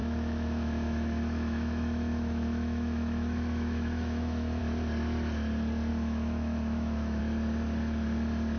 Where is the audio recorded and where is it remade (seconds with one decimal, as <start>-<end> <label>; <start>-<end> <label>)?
0.0-4.6 remade; 4.6-5.9 recorded; 5.9-7.2 remade; 7.2-8.6 recorded